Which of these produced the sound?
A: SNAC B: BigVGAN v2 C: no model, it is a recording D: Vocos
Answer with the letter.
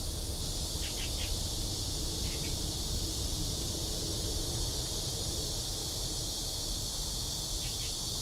C